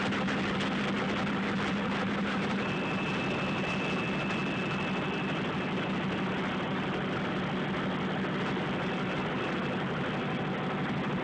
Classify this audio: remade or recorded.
recorded